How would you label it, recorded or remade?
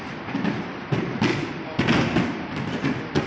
recorded